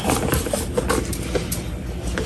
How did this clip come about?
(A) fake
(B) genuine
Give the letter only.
B